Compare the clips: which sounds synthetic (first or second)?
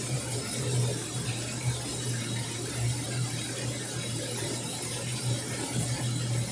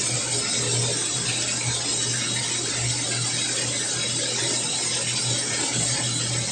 first